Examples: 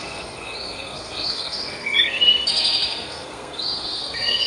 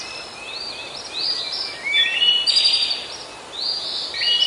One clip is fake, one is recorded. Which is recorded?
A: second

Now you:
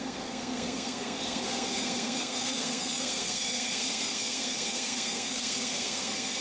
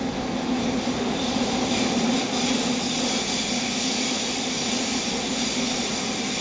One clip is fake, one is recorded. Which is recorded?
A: second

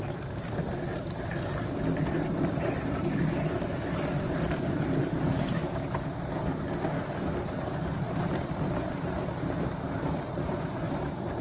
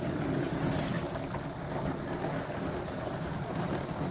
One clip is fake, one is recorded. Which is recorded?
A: second